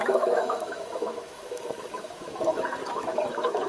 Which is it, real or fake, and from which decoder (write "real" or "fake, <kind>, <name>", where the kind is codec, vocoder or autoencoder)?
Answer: fake, autoencoder, DAC-VAE